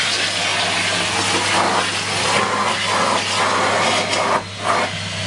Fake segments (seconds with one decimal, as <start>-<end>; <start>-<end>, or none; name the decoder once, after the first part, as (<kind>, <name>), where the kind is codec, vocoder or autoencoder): none